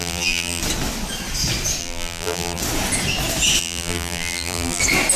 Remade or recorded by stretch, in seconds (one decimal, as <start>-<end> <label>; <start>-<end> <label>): 0.0-0.6 remade; 0.6-1.8 recorded; 1.8-2.6 remade; 2.6-3.6 recorded; 3.6-4.8 remade; 4.8-5.2 recorded